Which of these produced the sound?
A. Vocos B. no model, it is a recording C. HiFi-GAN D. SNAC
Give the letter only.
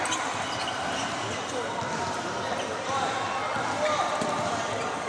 B